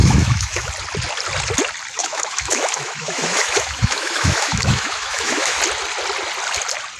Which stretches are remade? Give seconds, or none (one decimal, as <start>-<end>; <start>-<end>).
0.0-0.7; 2.0-5.6